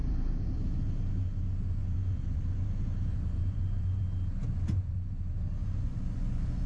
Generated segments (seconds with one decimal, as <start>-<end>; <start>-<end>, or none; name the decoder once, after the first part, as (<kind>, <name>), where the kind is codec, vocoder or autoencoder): 3.4-4.0 (vocoder, Vocos); 5.6-6.7